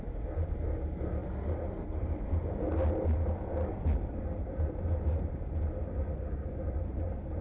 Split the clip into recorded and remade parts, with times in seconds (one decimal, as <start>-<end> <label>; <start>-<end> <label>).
0.0-1.2 recorded; 1.2-2.4 remade; 2.4-4.4 recorded; 4.4-5.4 remade; 5.4-7.4 recorded